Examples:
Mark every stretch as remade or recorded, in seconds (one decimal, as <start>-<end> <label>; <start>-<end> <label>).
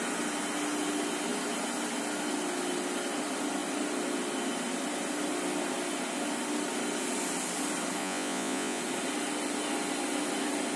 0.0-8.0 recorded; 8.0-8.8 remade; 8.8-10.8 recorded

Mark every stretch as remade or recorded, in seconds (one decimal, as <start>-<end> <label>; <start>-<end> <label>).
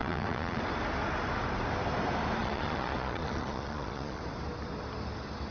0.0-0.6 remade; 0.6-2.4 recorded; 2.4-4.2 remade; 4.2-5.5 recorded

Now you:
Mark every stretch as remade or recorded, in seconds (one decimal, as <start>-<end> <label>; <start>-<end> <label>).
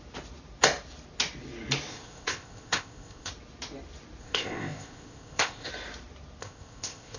0.0-1.9 recorded; 1.9-3.3 remade; 3.3-4.2 recorded; 4.2-5.7 remade; 5.7-6.4 recorded; 6.4-7.2 remade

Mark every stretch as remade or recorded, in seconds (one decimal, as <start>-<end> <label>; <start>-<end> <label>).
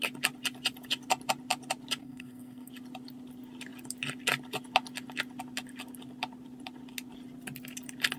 0.0-2.0 recorded; 2.0-2.7 remade; 2.7-8.2 recorded